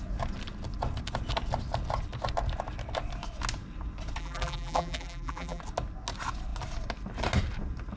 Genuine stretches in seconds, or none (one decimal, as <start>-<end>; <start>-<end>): 0.0-4.2; 5.6-8.0